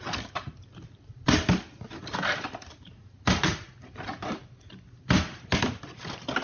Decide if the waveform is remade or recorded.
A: recorded